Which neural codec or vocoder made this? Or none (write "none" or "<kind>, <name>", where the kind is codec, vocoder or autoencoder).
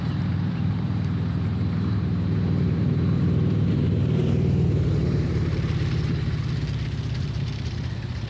vocoder, BigVGAN v2